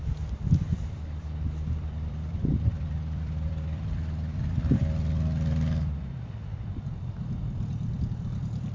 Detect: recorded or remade remade